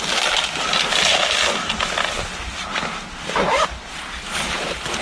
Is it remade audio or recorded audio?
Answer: recorded